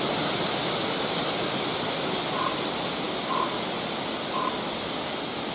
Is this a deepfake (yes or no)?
no